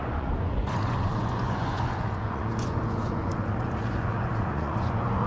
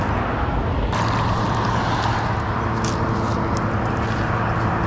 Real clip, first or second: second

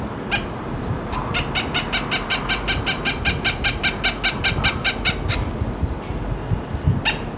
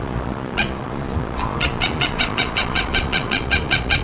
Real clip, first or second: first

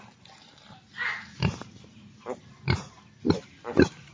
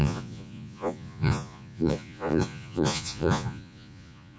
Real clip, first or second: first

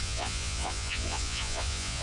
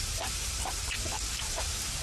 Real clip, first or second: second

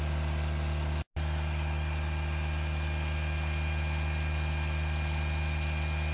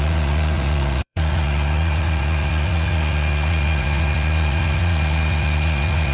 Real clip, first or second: first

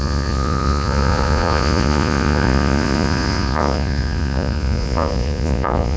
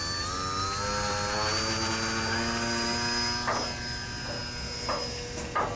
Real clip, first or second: second